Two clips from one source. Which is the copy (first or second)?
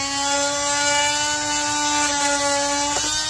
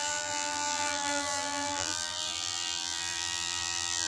second